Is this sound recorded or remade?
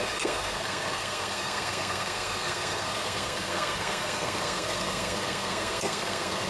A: remade